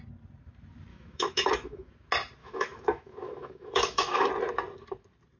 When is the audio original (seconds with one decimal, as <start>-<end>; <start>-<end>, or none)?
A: 0.0-0.9; 1.9-2.4; 4.3-5.4